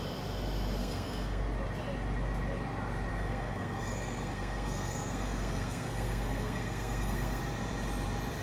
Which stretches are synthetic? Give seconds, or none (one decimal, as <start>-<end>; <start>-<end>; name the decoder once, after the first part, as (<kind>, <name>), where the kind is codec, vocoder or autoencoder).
0.8-1.4 (codec, SNAC); 3.1-7.4